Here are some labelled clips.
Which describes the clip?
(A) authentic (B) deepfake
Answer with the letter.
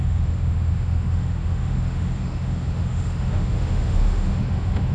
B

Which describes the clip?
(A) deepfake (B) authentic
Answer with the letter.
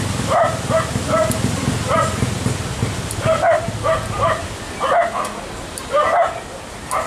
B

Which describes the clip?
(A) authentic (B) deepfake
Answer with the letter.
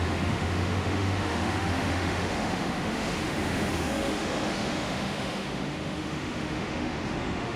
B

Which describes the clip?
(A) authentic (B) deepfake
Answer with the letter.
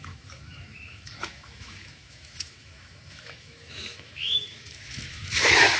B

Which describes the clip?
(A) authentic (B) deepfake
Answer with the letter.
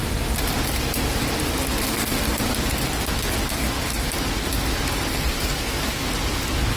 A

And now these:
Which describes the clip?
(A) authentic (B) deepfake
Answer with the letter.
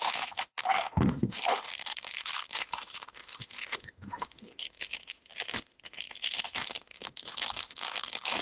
B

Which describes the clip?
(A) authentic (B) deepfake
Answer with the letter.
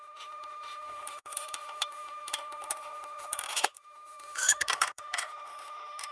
B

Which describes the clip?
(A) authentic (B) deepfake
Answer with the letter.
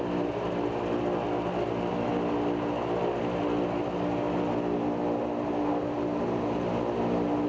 A